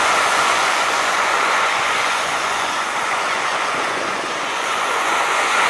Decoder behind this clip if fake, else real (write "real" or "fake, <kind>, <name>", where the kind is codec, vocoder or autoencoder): fake, vocoder, Vocos